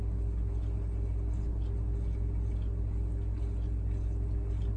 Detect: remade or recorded recorded